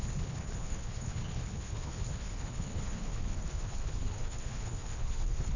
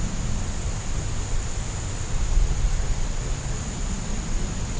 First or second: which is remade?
first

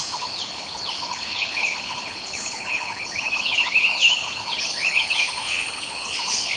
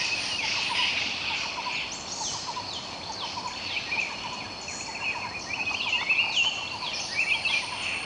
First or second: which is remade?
first